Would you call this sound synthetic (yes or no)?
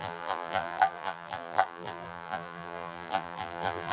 yes